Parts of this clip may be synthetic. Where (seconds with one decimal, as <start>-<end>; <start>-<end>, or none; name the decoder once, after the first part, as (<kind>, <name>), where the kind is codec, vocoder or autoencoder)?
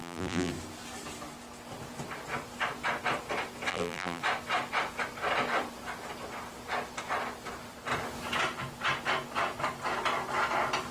0.0-0.5 (vocoder, BigVGAN v2); 3.7-4.2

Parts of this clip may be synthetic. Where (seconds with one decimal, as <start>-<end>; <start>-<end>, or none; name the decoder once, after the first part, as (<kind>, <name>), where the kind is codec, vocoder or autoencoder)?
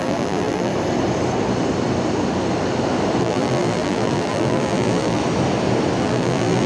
0.0-0.7 (vocoder, BigVGAN v2); 3.2-5.2; 6.0-6.7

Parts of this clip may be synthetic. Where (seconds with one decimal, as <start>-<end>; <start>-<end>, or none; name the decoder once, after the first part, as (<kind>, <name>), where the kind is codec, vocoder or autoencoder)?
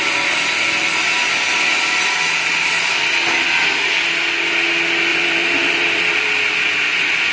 5.1-6.4 (vocoder, BigVGAN v2)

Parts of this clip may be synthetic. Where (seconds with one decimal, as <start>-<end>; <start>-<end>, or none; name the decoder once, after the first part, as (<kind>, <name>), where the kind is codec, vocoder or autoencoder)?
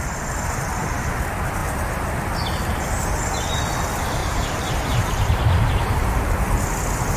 4.2-5.8 (vocoder, BigVGAN v2)